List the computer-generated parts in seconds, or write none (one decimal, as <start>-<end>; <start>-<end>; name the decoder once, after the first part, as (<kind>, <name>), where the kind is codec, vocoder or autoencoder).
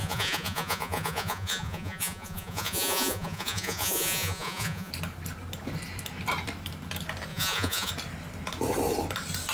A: 0.0-4.9 (vocoder, Vocos); 7.3-7.9